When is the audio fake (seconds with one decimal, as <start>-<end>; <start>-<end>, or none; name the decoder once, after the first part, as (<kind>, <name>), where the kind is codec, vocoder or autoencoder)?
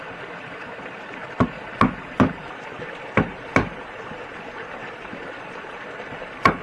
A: none